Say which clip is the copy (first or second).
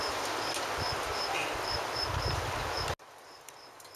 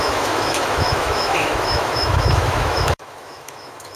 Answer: second